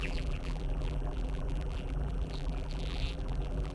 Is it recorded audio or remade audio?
remade